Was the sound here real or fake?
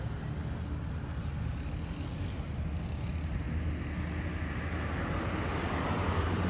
real